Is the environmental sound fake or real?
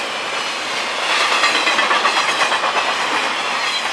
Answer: real